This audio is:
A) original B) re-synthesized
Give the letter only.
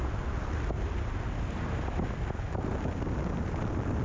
A